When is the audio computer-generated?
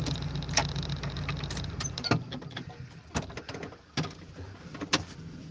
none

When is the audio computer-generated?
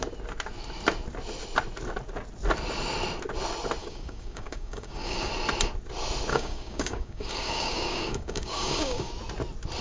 3.8-5.3; 6.3-9.1